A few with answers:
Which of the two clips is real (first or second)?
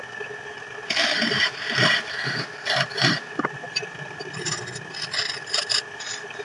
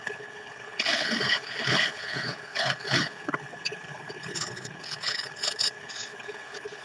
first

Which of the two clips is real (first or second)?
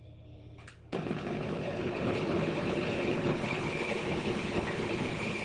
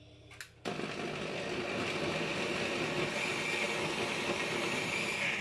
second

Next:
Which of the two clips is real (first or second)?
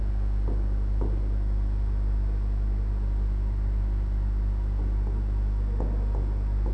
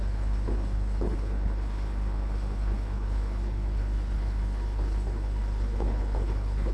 first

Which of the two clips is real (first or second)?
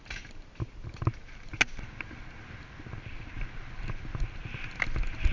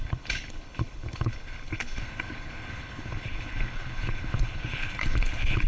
first